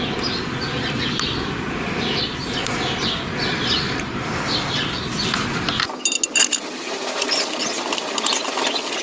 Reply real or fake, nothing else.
real